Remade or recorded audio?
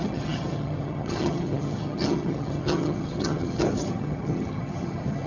remade